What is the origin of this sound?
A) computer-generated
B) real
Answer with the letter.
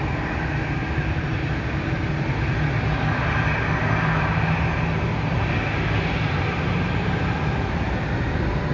B